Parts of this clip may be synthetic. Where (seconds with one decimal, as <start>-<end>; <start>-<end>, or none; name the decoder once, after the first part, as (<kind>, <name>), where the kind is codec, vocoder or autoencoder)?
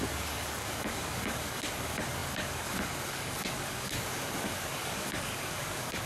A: 0.0-6.1 (codec, DAC)